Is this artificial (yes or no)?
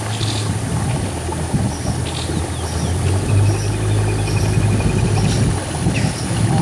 no